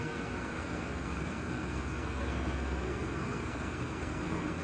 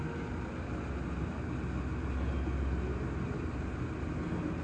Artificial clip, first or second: first